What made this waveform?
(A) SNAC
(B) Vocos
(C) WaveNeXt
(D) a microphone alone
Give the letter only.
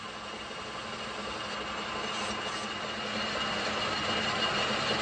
D